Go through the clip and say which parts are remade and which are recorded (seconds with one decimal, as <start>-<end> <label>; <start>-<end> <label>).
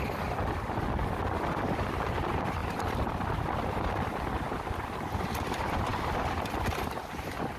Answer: 0.0-7.6 recorded